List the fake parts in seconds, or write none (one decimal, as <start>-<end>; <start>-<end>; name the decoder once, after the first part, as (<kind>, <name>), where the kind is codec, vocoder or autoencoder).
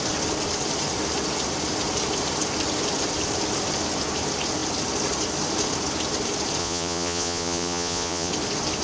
6.6-8.3 (vocoder, Vocos)